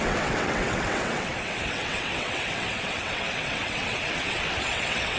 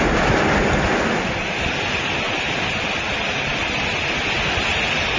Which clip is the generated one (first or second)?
first